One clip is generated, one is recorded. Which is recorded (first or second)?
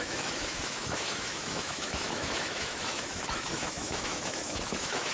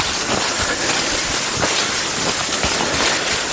second